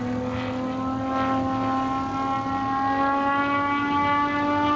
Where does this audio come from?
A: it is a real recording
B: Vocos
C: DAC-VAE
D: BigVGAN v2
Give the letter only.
A